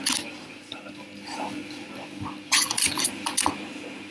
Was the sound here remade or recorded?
recorded